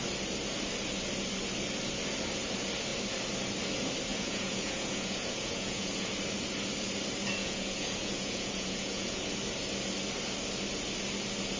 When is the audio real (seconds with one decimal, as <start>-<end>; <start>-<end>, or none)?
0.0-4.1; 6.1-7.4; 9.2-11.6